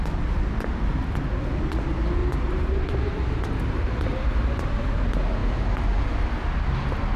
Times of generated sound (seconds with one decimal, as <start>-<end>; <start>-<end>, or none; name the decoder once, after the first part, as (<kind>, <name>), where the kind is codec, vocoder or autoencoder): 2.2-4.8 (vocoder, BigVGAN v2)